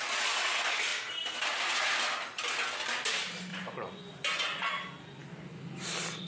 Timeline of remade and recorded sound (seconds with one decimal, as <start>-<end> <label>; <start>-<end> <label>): 0.0-3.5 recorded; 3.5-4.6 remade; 4.6-6.3 recorded